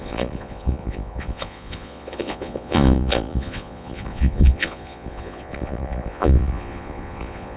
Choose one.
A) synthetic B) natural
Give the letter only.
A